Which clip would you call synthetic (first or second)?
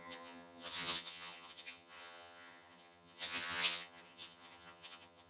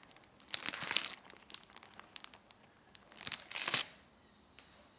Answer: first